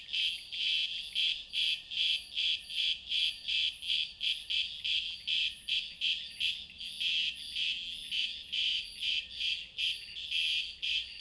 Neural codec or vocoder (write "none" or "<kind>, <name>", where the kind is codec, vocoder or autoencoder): none